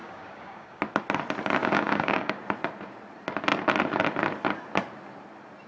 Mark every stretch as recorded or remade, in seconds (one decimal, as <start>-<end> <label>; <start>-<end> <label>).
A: 0.0-0.8 remade; 0.8-1.6 recorded; 1.6-2.4 remade; 2.4-5.7 recorded